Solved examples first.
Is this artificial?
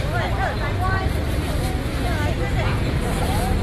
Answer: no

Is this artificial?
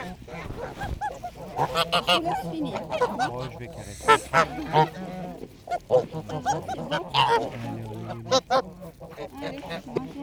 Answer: no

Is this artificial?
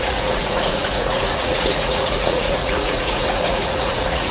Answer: yes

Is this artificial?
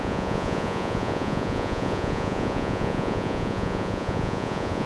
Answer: yes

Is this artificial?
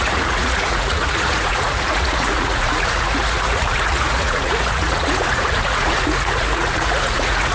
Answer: yes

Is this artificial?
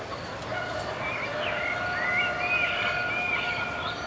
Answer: no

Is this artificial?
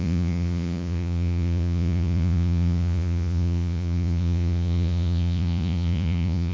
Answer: yes